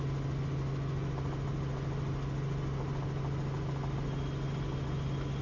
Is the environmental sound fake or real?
real